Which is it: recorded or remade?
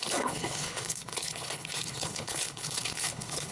remade